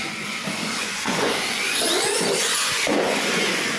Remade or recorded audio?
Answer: remade